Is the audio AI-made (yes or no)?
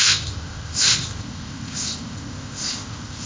yes